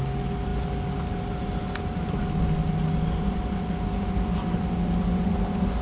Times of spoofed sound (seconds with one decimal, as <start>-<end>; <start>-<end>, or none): none